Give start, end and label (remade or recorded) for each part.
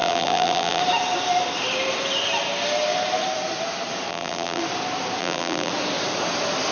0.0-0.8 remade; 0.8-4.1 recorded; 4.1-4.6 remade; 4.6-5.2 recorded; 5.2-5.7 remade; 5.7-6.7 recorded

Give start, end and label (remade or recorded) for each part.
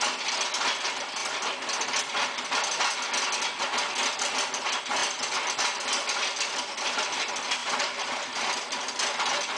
0.0-7.6 recorded; 7.6-8.8 remade; 8.8-9.6 recorded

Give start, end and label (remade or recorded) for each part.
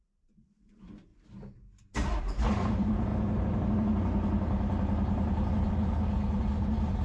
0.0-1.1 remade; 1.1-2.2 recorded; 2.2-7.0 remade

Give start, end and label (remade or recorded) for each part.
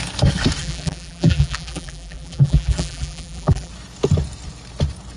0.0-0.6 recorded; 0.6-3.7 remade; 3.7-5.2 recorded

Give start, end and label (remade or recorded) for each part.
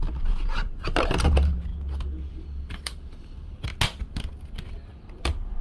0.0-1.7 remade; 1.7-2.3 recorded; 2.3-3.7 remade; 3.7-4.7 recorded; 4.7-5.6 remade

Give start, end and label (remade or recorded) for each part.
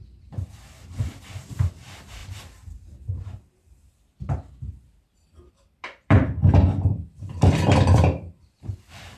0.0-2.2 remade; 2.2-5.5 recorded; 5.5-6.4 remade; 6.4-7.5 recorded; 7.5-9.2 remade